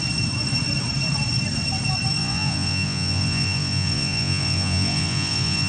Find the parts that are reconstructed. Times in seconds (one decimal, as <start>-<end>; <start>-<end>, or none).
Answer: 2.2-5.7